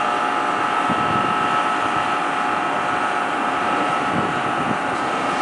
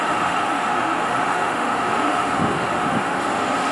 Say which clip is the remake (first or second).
second